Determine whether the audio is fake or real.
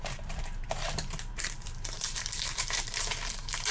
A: fake